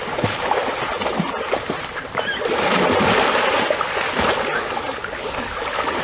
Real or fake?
real